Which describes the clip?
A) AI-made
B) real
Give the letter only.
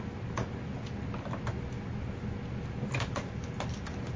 B